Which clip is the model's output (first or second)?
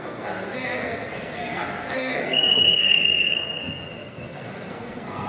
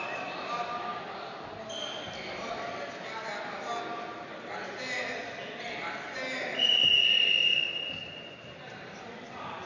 first